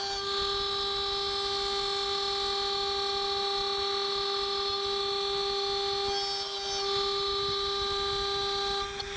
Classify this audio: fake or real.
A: real